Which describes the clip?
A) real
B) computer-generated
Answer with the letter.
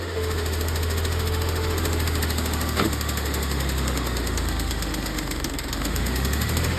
B